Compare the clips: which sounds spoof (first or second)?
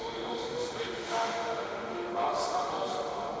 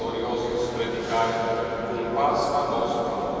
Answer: first